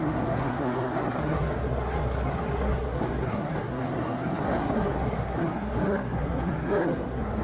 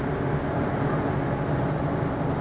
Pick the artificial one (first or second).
first